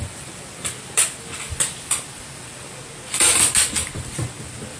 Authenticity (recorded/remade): recorded